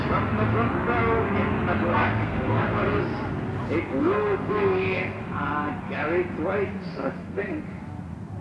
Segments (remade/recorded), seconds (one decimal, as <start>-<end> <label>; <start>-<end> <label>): 0.0-1.9 recorded; 1.9-3.0 remade; 3.0-4.0 recorded; 4.0-5.2 remade; 5.2-6.9 recorded; 6.9-7.6 remade; 7.6-8.4 recorded